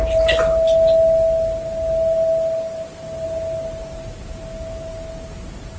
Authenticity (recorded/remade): recorded